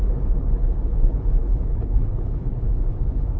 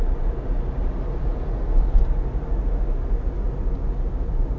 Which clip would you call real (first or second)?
second